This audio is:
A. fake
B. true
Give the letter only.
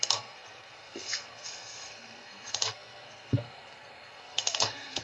A